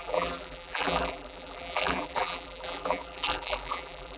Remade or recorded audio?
remade